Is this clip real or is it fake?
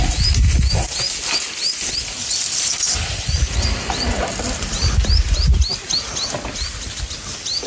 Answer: real